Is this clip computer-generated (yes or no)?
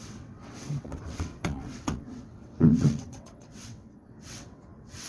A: yes